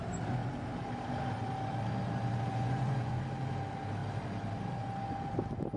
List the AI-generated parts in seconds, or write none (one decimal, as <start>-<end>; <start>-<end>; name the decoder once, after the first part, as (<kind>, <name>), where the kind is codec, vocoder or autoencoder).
2.5-3.2 (vocoder, Vocos)